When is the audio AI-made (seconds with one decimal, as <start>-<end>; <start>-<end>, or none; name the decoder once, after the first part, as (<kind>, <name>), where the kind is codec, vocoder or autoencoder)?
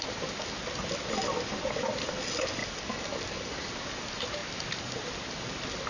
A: 2.6-3.7 (codec, DAC)